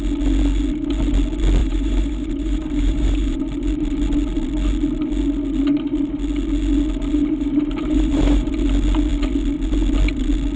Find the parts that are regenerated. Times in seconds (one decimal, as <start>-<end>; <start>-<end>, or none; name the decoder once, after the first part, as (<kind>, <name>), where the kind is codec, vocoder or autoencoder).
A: 1.6-3.4 (vocoder, BigVGAN v2); 7.1-8.5